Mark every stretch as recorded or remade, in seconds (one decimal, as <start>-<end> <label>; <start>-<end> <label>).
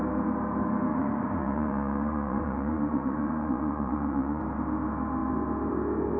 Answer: 0.0-0.9 recorded; 0.9-4.4 remade; 4.4-6.2 recorded